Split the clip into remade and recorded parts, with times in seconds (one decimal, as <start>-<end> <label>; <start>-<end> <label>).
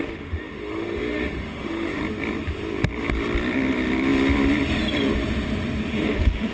0.0-2.0 remade; 2.0-5.9 recorded; 5.9-6.5 remade